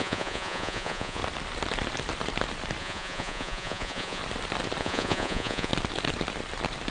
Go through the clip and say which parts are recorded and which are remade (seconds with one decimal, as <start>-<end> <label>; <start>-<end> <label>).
0.0-1.2 remade; 1.2-2.8 recorded; 2.8-4.2 remade; 4.2-4.8 recorded; 4.8-5.7 remade; 5.7-6.9 recorded